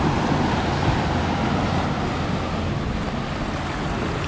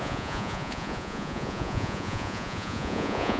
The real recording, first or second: first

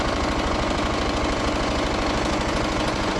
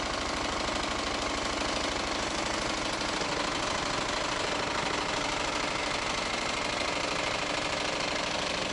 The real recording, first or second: second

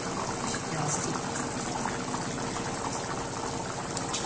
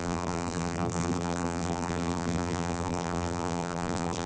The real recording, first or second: first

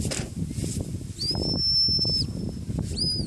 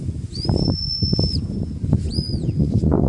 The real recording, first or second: first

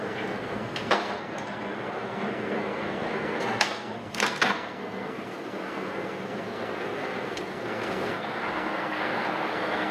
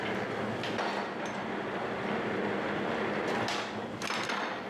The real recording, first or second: second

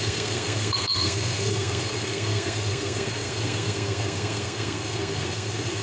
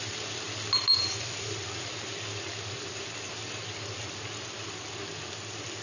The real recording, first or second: second